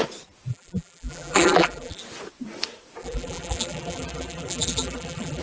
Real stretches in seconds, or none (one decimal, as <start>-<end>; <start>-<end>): 0.0-0.5; 2.0-3.0